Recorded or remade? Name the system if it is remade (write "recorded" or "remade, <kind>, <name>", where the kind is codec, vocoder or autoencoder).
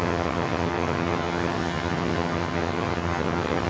remade, vocoder, HiFi-GAN